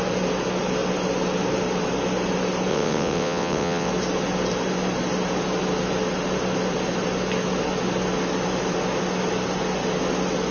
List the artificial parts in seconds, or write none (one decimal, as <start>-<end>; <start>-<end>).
2.7-3.9